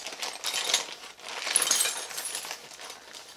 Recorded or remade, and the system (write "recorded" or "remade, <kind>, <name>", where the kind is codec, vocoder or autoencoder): recorded